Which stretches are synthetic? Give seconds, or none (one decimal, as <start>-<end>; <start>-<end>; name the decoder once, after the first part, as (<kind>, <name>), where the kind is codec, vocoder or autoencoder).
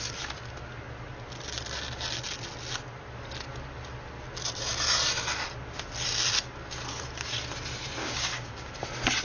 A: 8.0-8.7 (codec, DAC)